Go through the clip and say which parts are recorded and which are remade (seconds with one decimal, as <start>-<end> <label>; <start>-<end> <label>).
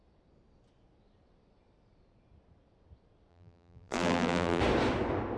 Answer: 0.0-3.3 recorded; 3.3-4.6 remade; 4.6-5.4 recorded